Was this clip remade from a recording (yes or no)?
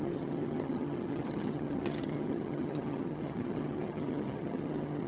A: yes